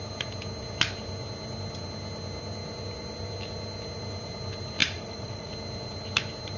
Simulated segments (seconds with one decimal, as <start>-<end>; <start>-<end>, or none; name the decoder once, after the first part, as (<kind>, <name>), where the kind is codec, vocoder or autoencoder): 4.8-5.5 (vocoder, Vocos)